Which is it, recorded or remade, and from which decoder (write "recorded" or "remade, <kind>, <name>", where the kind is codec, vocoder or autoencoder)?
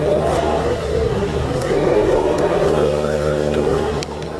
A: remade, codec, SNAC